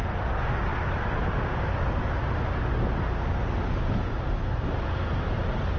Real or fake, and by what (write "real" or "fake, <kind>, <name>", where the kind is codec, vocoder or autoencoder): real